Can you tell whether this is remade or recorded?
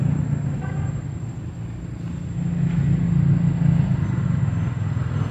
recorded